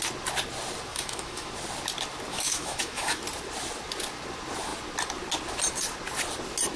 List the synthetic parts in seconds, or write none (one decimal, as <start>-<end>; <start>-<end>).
0.9-1.5; 2.3-3.2